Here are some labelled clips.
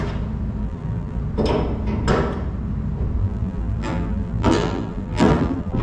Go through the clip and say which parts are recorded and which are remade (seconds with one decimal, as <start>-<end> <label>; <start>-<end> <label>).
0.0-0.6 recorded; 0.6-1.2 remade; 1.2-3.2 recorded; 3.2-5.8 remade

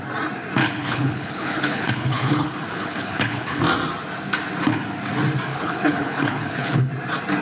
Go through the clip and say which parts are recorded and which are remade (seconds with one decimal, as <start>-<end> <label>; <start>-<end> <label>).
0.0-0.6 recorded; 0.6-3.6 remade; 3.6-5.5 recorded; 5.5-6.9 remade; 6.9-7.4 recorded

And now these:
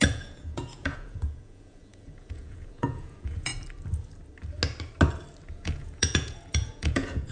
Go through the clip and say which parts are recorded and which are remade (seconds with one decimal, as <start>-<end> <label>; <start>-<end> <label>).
0.0-3.5 remade; 3.5-5.5 recorded; 5.5-7.3 remade

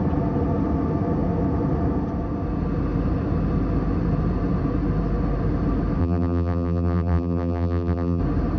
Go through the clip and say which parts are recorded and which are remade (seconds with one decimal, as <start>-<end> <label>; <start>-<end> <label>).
0.0-6.0 recorded; 6.0-8.2 remade; 8.2-8.6 recorded

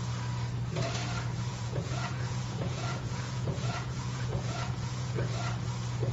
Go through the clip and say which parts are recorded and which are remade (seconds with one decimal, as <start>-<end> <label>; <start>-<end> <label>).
0.0-1.5 recorded; 1.5-5.2 remade; 5.2-6.1 recorded